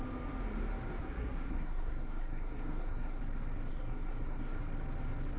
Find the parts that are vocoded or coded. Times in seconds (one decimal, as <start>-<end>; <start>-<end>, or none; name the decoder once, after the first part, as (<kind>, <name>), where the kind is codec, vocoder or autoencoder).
1.0-3.2 (codec, SNAC); 3.7-4.6